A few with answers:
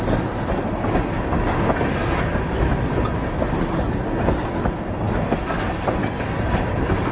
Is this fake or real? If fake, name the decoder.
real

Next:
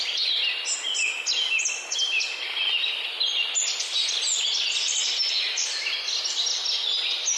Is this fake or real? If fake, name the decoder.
real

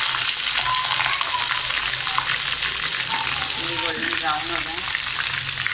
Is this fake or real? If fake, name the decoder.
real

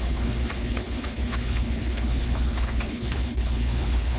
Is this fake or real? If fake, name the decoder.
fake, codec, HILCodec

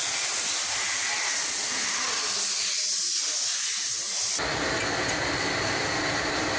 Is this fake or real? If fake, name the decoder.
real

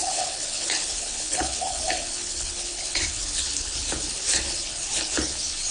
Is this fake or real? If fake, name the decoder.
fake, codec, HILCodec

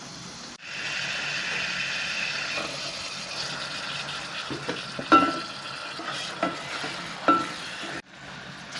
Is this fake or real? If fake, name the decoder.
real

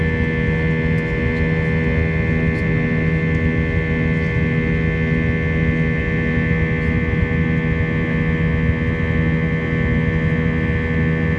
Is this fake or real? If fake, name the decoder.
real